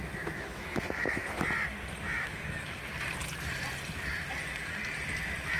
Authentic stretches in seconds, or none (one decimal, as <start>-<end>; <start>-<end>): 1.2-2.0; 2.8-5.6